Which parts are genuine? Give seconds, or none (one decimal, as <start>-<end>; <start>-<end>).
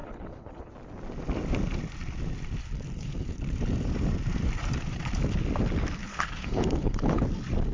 0.7-2.6; 3.4-6.0; 7.2-7.7